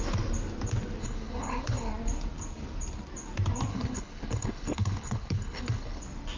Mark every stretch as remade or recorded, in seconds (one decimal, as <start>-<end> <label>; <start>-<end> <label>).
0.0-1.0 recorded; 1.0-1.9 remade; 1.9-3.7 recorded; 3.7-6.0 remade; 6.0-6.4 recorded